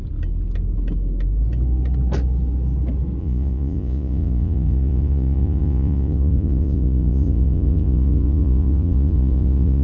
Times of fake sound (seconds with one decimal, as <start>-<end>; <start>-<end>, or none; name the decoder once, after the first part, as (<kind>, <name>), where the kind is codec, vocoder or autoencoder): 3.2-9.8 (vocoder, Vocos)